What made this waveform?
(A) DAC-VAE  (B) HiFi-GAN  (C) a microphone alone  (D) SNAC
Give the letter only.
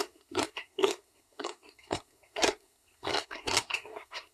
D